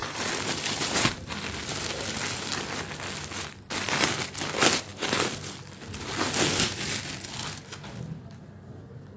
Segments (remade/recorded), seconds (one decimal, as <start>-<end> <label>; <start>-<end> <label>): 0.0-1.5 remade; 1.5-9.2 recorded